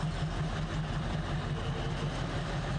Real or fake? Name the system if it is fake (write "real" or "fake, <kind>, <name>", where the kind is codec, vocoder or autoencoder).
real